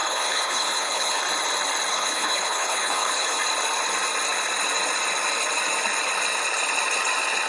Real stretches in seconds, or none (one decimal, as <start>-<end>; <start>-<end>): 1.2-1.9; 3.4-7.5